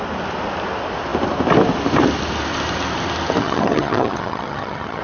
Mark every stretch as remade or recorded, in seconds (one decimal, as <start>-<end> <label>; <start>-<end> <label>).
0.0-3.4 recorded; 3.4-5.0 remade